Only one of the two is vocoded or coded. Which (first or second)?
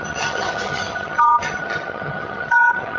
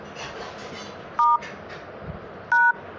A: first